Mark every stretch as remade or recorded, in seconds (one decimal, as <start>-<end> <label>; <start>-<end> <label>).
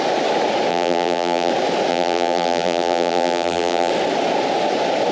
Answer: 0.0-0.7 recorded; 0.7-1.5 remade; 1.5-1.9 recorded; 1.9-3.9 remade; 3.9-5.1 recorded